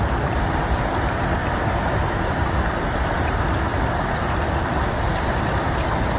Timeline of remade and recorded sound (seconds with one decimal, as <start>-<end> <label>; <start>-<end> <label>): 0.0-1.4 recorded; 1.4-2.2 remade; 2.2-6.2 recorded

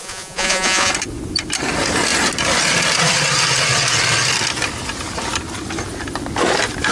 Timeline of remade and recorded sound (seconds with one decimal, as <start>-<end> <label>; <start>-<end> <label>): 0.0-0.9 remade; 0.9-6.9 recorded

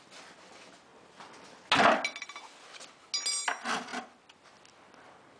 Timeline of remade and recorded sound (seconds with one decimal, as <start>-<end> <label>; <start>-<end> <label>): 0.0-5.4 recorded